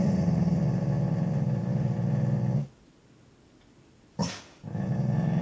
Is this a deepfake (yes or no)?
no